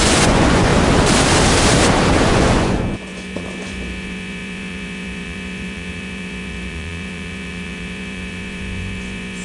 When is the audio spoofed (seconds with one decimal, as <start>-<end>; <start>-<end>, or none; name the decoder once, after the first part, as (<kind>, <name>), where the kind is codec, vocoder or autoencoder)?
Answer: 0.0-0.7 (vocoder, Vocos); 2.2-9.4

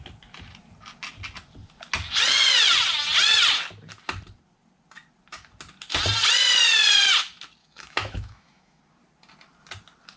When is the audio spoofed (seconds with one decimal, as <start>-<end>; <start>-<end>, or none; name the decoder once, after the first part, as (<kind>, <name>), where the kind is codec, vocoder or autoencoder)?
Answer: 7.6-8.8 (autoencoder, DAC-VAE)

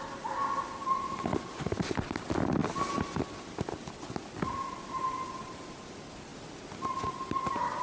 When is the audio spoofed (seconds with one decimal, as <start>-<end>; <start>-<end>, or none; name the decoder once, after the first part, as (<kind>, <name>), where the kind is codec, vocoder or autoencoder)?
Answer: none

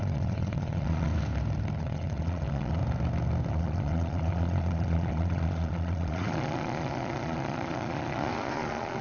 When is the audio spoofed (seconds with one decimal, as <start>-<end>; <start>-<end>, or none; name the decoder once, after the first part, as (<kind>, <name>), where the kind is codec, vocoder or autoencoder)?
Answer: 0.0-1.1 (vocoder, Vocos); 1.8-2.8; 3.5-9.0